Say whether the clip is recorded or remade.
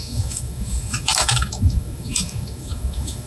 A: remade